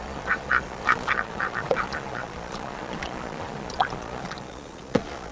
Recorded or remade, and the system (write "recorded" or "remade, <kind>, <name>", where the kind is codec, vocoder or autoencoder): remade, vocoder, Vocos